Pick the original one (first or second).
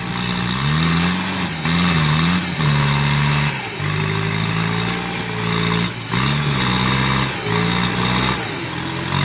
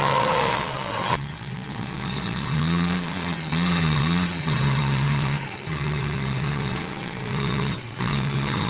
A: first